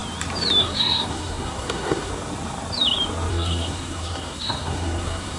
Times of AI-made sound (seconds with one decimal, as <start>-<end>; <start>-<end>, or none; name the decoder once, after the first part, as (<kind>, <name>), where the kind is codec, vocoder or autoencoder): 0.6-2.1 (codec, SNAC); 3.3-5.4